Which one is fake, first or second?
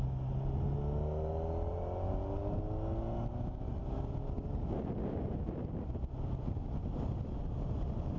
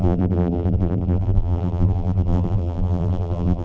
second